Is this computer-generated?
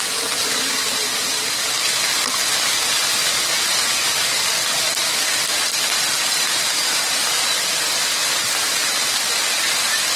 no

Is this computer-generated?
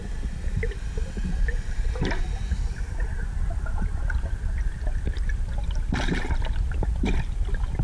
no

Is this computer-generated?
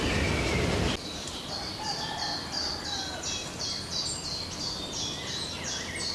no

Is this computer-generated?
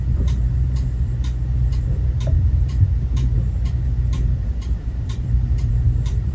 yes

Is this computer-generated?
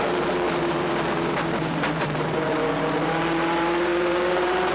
yes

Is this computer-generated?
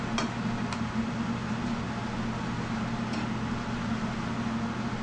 no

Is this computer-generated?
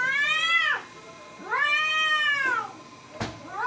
no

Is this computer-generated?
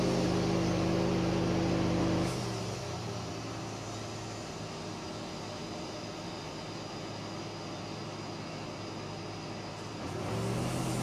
no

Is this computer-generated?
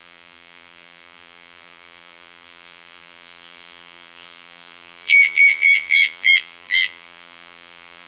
yes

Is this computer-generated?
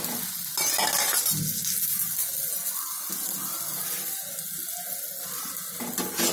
no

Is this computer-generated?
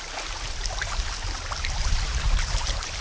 yes